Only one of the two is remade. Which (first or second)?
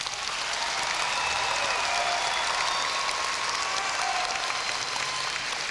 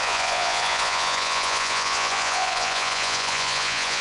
second